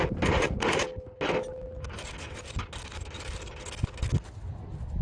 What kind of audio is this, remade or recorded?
recorded